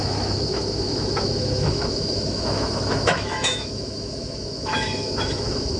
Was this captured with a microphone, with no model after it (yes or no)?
no